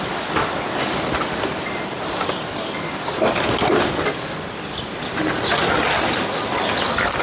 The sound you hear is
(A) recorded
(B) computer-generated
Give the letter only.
A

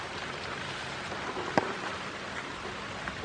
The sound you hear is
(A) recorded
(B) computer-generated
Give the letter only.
A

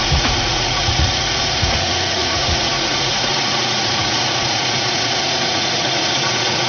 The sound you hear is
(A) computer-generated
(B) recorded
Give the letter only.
A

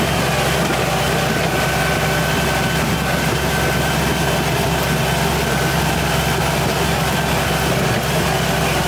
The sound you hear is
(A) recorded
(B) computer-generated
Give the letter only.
A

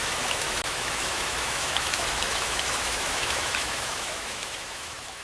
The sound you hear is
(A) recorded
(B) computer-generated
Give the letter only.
B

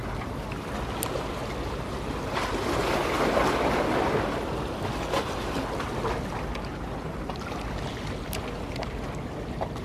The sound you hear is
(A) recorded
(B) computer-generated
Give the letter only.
A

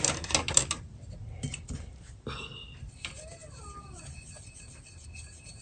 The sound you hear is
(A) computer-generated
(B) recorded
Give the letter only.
B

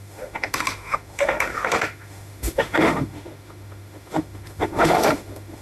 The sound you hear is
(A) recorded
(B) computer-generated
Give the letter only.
B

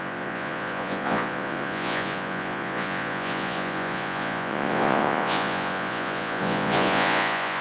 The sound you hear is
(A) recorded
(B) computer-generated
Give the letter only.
B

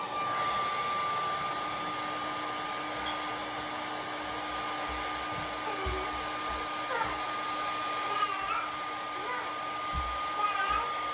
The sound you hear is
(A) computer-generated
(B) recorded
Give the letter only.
B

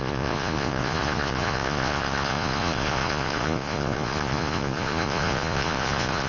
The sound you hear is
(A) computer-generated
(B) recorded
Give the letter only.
A